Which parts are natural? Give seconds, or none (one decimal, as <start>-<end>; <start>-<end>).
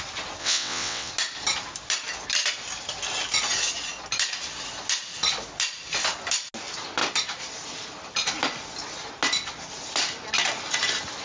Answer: 0.0-0.4; 1.1-11.2